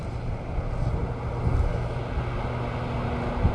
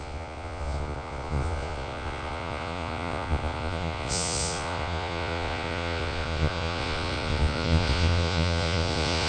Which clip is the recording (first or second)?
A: first